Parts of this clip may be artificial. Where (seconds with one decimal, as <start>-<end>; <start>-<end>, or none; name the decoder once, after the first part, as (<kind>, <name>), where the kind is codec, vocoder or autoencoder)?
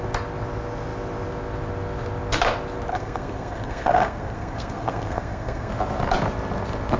2.9-5.7 (codec, SNAC)